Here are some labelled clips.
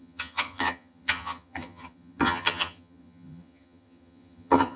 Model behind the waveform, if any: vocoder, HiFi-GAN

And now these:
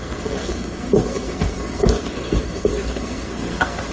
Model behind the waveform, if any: codec, SNAC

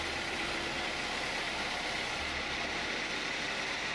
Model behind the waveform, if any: none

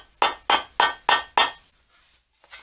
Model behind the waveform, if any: none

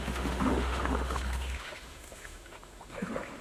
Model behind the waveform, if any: autoencoder, DAC-VAE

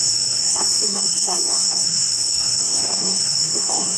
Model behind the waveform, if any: codec, SNAC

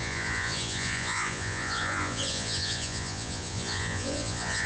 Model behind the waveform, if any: vocoder, Vocos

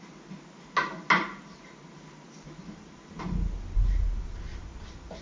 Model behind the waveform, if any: none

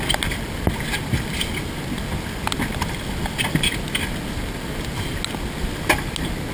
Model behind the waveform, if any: none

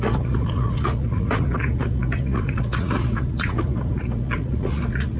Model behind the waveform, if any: vocoder, Vocos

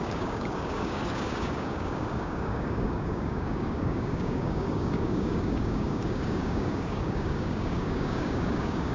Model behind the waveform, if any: codec, DAC